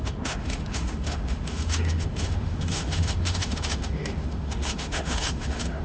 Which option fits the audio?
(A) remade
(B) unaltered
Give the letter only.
A